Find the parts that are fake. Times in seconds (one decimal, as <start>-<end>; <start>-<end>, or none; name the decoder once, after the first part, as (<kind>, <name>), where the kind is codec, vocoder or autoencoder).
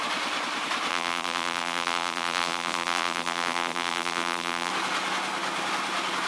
0.9-4.7 (vocoder, BigVGAN v2)